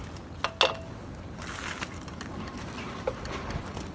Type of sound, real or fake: real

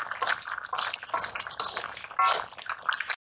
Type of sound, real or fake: real